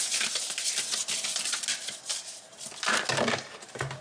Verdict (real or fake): real